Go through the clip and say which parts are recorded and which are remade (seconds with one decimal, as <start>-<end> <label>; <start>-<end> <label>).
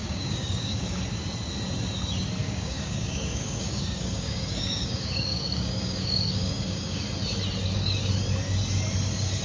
0.0-1.0 remade; 1.0-2.4 recorded; 2.4-7.0 remade; 7.0-9.4 recorded